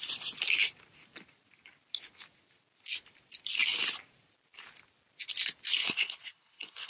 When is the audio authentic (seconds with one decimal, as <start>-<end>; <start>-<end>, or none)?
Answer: 0.0-5.8